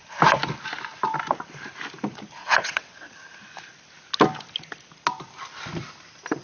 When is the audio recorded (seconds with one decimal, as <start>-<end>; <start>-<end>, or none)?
0.0-2.4; 3.1-6.4